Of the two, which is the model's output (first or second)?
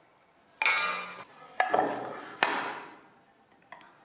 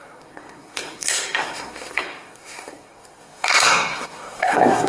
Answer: second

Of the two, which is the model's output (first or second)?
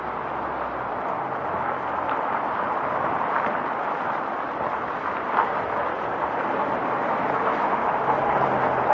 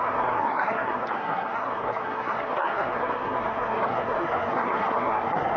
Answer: second